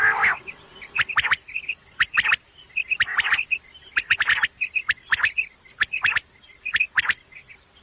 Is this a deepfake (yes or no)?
no